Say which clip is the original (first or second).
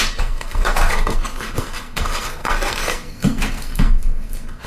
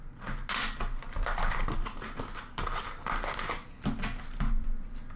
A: second